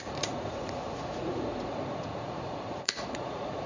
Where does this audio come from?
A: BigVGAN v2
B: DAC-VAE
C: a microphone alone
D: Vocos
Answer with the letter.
D